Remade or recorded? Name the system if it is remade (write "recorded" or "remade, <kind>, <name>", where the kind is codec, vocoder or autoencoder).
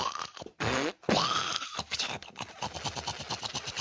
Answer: recorded